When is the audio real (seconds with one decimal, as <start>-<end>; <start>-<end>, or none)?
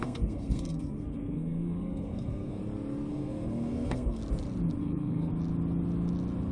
2.6-3.1; 4.2-4.8; 5.3-6.5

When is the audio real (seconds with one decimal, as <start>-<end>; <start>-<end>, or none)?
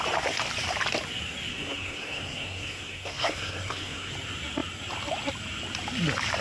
0.0-1.5; 4.1-6.4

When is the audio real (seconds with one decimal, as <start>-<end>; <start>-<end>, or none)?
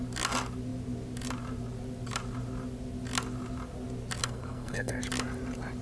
0.0-4.2; 5.0-5.8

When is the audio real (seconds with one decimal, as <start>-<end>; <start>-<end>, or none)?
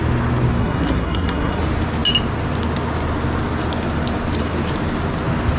0.0-0.6; 1.6-5.6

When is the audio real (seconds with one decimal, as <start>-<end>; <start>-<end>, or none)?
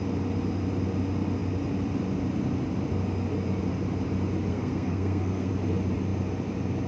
0.0-4.5; 5.5-6.9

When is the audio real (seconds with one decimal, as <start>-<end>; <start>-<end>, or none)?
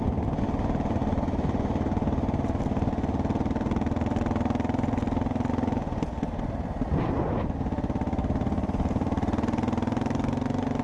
0.0-10.8